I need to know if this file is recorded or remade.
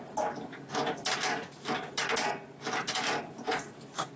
recorded